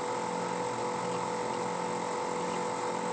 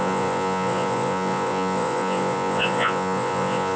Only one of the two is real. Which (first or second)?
first